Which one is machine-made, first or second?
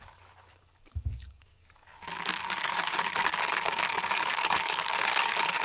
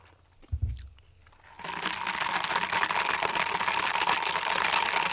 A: first